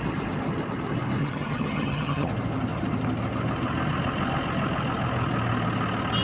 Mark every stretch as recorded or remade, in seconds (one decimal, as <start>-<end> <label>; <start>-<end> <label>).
0.0-1.2 recorded; 1.2-2.3 remade; 2.3-6.2 recorded